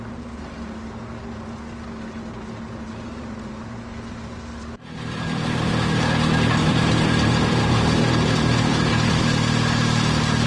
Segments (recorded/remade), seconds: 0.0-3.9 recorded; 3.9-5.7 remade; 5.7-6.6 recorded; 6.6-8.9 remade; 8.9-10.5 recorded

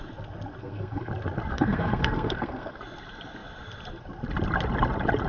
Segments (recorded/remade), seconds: 0.0-0.6 recorded; 0.6-1.1 remade; 1.1-1.5 recorded; 1.5-2.8 remade; 2.8-5.3 recorded

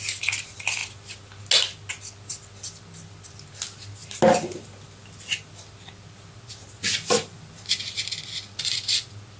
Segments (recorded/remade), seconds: 0.0-9.4 recorded

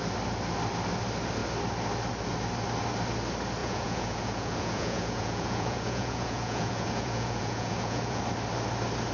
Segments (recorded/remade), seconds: 0.0-3.6 recorded; 3.6-8.2 remade; 8.2-9.1 recorded